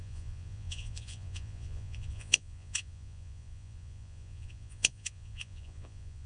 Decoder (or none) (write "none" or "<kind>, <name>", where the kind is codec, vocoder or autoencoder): vocoder, Vocos